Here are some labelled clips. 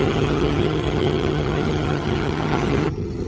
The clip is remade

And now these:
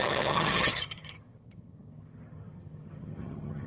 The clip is remade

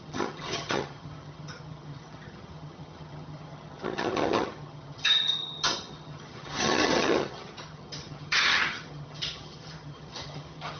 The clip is remade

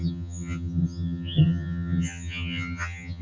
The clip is remade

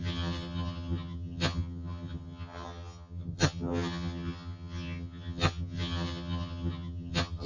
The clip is remade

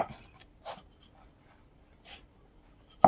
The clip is recorded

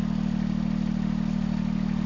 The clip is recorded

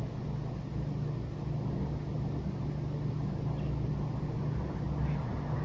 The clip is recorded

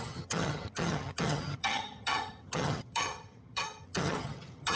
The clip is remade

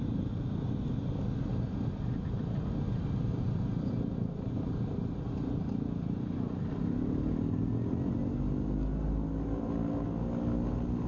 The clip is recorded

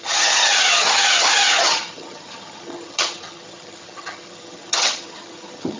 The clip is remade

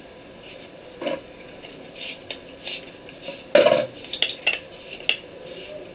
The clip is recorded